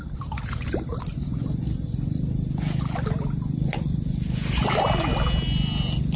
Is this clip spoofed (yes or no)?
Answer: no